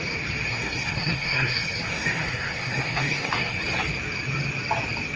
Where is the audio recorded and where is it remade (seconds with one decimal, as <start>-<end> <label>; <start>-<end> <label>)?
0.0-0.5 recorded; 0.5-3.6 remade; 3.6-5.2 recorded